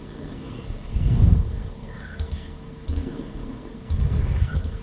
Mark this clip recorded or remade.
remade